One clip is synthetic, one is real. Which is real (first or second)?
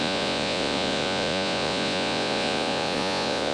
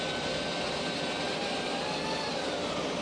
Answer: second